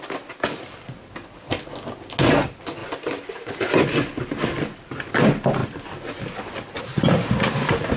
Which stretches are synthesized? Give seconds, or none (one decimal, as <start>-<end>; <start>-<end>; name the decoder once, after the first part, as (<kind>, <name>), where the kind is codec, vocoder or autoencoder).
none